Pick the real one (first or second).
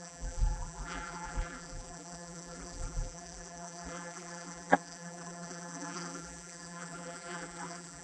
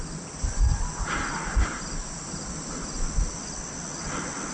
second